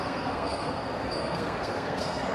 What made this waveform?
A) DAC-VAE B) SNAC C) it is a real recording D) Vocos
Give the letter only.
B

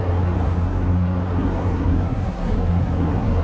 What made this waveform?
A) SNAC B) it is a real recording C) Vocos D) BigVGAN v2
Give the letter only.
A